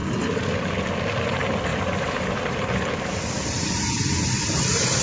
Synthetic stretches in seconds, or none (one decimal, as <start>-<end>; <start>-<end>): 1.7-5.0